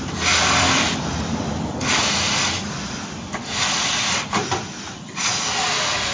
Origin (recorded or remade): remade